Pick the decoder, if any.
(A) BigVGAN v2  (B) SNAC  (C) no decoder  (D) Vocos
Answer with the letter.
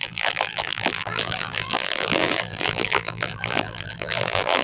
A